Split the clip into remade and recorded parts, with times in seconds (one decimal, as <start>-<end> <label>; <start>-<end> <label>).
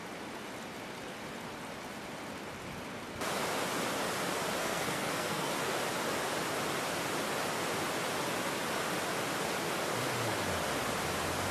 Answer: 0.0-4.6 recorded; 4.6-5.5 remade; 5.5-11.5 recorded